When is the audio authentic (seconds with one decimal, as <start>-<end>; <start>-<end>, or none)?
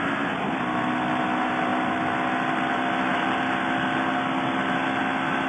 0.0-5.5